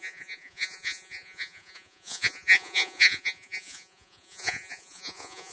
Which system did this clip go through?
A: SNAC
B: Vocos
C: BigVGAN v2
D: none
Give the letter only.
B